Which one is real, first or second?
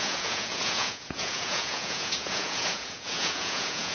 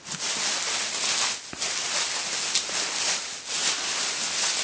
second